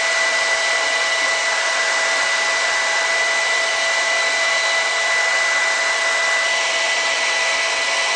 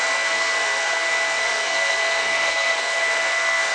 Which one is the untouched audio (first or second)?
first